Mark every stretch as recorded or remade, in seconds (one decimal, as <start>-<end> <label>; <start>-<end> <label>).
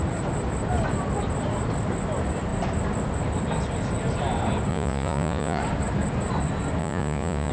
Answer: 0.0-4.7 recorded; 4.7-5.6 remade; 5.6-6.8 recorded; 6.8-7.5 remade